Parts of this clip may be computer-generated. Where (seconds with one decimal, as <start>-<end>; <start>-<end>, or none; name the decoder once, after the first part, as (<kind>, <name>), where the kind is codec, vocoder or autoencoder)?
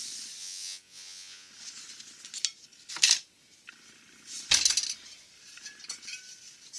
0.4-1.5 (vocoder, Vocos)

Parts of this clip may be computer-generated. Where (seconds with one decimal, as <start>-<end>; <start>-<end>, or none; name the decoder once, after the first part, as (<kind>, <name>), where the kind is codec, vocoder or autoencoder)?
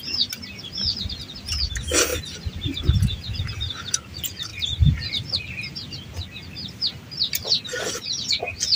none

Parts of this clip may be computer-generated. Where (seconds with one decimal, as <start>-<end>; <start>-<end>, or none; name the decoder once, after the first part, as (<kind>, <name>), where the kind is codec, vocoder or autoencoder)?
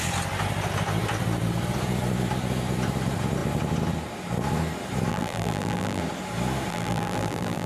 5.1-6.0 (vocoder, BigVGAN v2); 6.7-7.7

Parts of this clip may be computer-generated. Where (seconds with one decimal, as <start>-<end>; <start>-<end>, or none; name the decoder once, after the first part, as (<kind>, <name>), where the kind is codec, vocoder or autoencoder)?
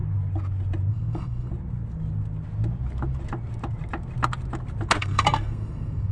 0.9-1.5 (codec, SNAC); 5.0-6.1